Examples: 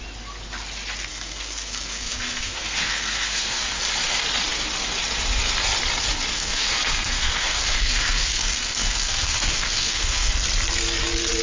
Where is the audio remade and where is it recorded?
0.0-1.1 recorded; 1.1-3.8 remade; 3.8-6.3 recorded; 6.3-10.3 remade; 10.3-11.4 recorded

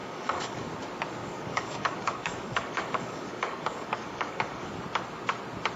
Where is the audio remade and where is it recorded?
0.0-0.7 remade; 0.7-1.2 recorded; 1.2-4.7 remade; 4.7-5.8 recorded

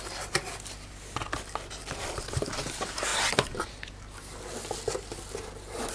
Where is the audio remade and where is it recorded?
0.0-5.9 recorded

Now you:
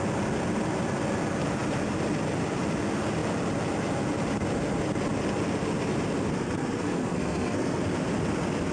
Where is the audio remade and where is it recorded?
0.0-6.3 recorded; 6.3-7.8 remade; 7.8-8.7 recorded

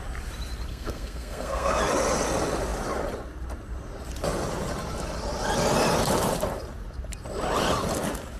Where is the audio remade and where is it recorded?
0.0-0.7 recorded; 0.7-1.8 remade; 1.8-8.4 recorded